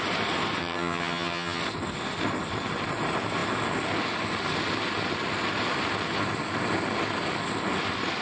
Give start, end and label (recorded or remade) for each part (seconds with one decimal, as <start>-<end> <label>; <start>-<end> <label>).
0.0-0.6 recorded; 0.6-1.6 remade; 1.6-8.2 recorded